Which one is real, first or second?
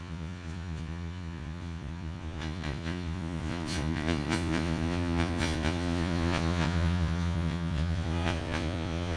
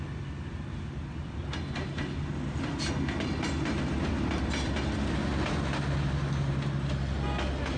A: second